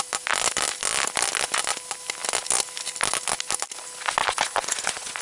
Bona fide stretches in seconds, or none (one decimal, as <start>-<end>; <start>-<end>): 0.0-4.2

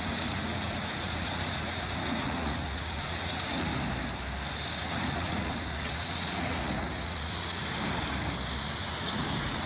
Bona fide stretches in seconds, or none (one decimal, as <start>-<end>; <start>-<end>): 3.7-4.8; 7.6-8.8

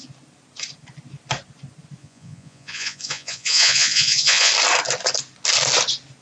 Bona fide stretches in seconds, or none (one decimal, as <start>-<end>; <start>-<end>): 0.0-2.0; 4.5-6.2

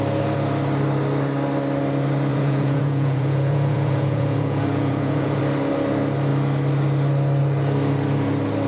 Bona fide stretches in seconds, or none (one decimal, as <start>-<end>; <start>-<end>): 0.0-2.3; 5.4-8.7

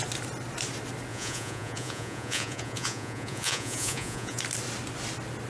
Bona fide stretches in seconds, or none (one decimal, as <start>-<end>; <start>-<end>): 0.0-1.1; 4.4-5.5

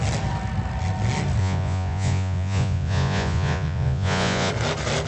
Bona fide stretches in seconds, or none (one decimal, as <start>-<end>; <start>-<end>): 0.0-1.4; 4.5-5.1

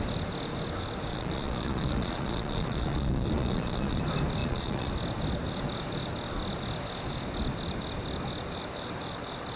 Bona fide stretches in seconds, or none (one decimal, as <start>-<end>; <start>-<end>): 0.0-1.1; 4.0-4.4; 4.9-9.6

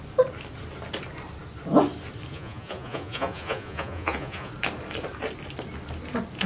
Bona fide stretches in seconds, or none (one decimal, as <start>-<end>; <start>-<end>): 0.0-2.3; 4.5-6.5